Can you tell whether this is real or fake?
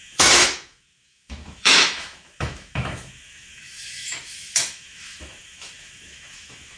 fake